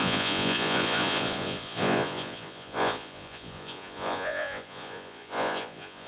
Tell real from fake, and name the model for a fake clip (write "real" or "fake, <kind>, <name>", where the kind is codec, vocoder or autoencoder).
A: fake, vocoder, Vocos